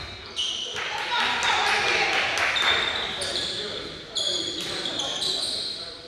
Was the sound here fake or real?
real